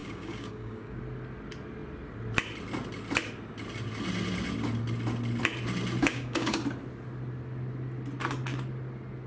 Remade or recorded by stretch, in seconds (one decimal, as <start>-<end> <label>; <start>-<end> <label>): 0.0-1.0 remade; 1.0-6.0 recorded; 6.0-6.6 remade; 6.6-9.3 recorded